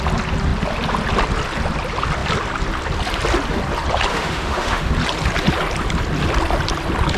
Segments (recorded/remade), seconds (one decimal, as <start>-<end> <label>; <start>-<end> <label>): 0.0-4.1 recorded; 4.1-4.9 remade; 4.9-7.2 recorded